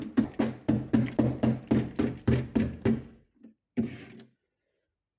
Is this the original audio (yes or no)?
no